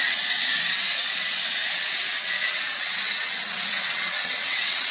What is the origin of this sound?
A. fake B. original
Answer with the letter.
A